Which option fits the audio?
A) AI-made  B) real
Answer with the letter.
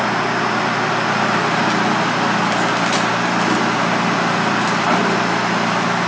B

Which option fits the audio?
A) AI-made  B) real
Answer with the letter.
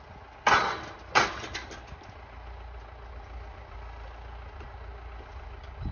B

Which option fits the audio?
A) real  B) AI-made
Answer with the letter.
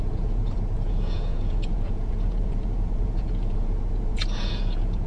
B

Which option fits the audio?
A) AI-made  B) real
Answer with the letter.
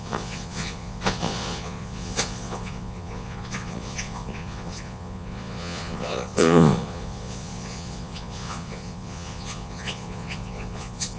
A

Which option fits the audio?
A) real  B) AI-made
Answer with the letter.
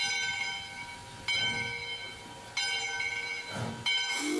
A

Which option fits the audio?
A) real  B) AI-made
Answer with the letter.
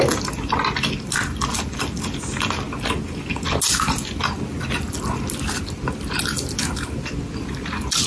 A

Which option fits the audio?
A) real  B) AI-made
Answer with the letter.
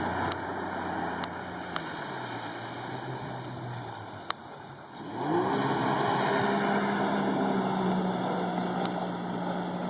A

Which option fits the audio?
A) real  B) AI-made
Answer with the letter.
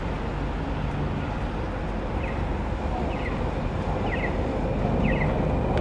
A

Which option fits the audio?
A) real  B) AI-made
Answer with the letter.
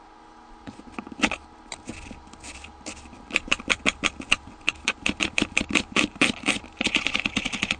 A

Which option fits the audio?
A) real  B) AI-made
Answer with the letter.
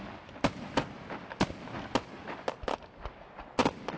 A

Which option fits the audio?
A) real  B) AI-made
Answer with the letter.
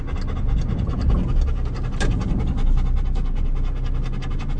A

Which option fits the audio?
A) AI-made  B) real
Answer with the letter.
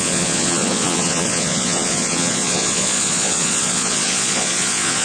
A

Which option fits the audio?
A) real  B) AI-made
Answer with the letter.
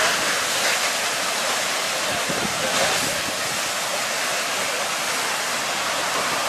A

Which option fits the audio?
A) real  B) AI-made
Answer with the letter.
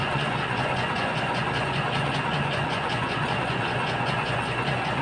B